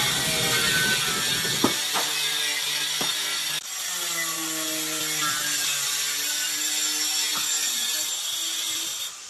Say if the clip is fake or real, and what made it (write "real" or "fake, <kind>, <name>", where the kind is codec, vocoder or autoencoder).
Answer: real